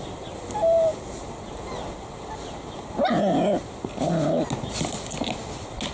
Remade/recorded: recorded